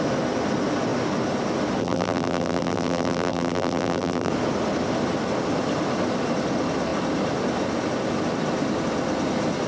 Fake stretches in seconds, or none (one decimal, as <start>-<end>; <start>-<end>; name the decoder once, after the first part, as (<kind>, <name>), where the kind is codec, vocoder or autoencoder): 1.8-4.3 (vocoder, BigVGAN v2)